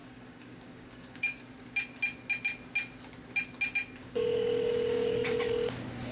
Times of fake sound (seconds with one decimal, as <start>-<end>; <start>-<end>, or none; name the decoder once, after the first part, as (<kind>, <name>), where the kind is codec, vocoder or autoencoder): 0.0-1.4 (codec, DAC); 4.0-5.5

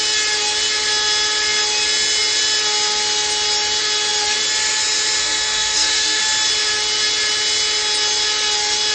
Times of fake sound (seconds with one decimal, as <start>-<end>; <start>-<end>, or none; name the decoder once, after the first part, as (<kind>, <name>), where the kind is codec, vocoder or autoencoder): 5.2-6.2 (codec, SNAC)